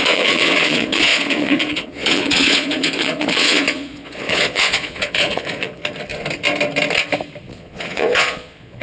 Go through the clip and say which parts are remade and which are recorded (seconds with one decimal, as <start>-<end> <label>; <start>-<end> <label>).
0.0-5.8 remade; 5.8-7.5 recorded; 7.5-8.8 remade